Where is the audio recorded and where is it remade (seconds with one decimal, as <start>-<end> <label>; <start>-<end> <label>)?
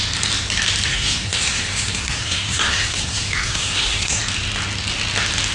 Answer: 0.0-0.9 recorded; 0.9-4.2 remade; 4.2-5.5 recorded